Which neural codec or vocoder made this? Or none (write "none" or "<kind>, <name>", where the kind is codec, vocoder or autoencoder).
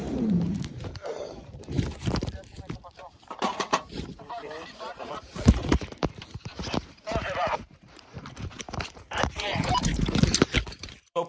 vocoder, BigVGAN v2